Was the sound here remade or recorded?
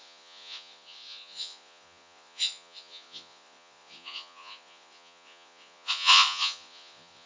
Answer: remade